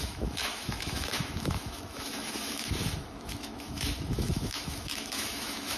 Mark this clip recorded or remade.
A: remade